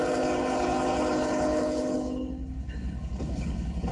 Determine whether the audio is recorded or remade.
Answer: remade